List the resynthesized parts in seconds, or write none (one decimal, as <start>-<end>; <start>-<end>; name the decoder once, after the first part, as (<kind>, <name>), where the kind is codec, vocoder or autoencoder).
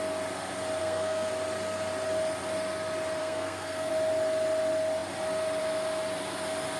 0.8-1.3 (codec, SNAC); 3.2-3.9